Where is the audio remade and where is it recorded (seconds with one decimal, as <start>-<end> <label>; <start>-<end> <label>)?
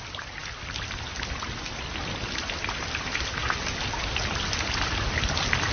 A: 0.0-5.7 recorded